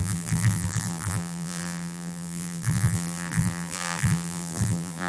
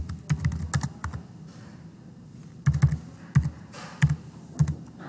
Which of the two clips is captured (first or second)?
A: second